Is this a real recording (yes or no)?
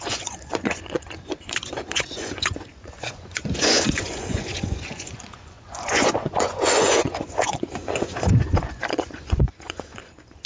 no